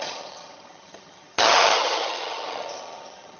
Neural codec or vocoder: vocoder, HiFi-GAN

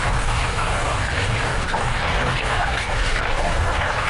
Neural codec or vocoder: codec, DAC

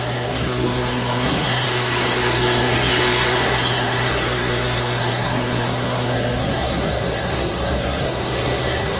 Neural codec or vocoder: codec, SNAC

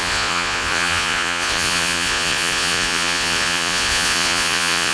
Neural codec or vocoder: vocoder, Vocos